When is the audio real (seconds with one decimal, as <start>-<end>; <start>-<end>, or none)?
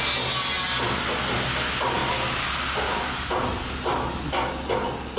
0.0-5.2